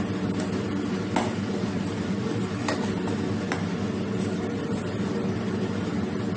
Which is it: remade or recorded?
recorded